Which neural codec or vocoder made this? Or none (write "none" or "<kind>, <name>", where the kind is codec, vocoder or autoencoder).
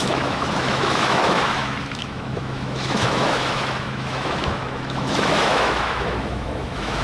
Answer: autoencoder, DAC-VAE